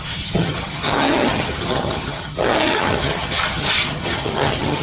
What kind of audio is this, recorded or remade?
remade